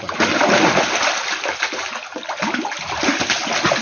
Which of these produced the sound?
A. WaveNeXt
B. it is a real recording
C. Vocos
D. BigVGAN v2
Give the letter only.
B